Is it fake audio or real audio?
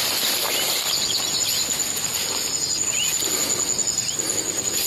real